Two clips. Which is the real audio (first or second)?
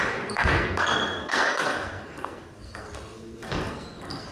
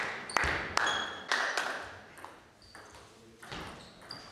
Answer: second